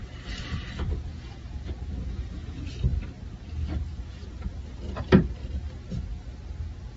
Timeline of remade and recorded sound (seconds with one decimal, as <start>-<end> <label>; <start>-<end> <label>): 0.0-1.1 recorded; 1.1-1.7 remade; 1.7-7.0 recorded